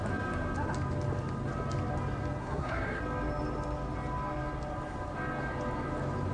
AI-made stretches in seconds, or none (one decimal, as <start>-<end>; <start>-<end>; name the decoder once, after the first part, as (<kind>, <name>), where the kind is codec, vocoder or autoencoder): 2.4-3.0 (codec, SNAC)